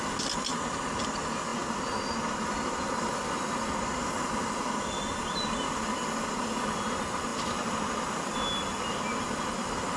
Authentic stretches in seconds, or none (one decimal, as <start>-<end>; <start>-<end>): 0.0-10.0